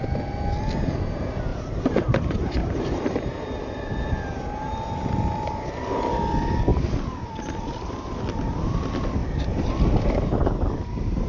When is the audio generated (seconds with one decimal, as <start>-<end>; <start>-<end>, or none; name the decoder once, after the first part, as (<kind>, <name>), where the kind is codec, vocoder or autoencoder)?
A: 1.5-6.0 (vocoder, BigVGAN v2); 9.2-11.3

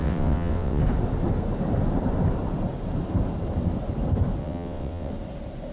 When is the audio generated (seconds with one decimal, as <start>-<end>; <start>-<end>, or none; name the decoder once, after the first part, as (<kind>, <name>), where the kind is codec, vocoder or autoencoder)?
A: 0.0-0.8 (vocoder, WaveNeXt); 4.4-5.1

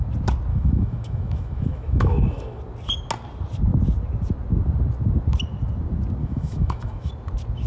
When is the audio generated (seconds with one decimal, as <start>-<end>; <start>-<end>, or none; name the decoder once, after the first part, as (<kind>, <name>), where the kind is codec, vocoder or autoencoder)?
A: 0.5-2.6 (autoencoder, DAC-VAE); 6.2-7.1

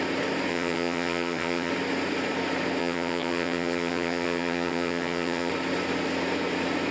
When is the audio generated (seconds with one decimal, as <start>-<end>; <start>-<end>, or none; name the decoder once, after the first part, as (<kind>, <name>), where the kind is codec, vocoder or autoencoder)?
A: 0.5-1.7 (vocoder, HiFi-GAN); 2.8-5.5

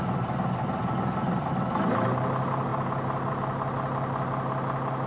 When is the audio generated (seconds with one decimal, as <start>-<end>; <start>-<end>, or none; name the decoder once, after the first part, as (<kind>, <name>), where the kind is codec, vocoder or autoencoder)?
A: none

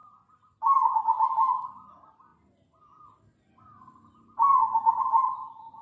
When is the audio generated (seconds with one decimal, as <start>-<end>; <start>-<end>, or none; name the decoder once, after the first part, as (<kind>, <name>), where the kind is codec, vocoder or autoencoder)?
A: 0.0-2.3 (vocoder, BigVGAN v2); 5.0-5.8

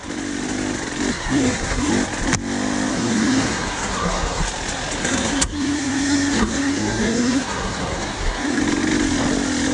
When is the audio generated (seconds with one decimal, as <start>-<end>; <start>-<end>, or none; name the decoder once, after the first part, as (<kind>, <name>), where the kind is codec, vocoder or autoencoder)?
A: 1.1-1.9 (codec, SNAC); 2.9-4.4; 5.0-8.6